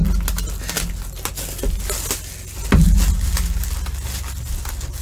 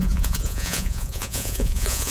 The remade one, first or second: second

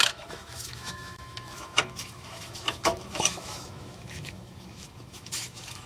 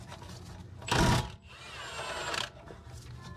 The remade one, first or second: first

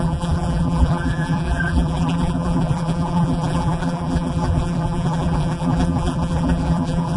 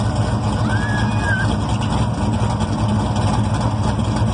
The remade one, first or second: first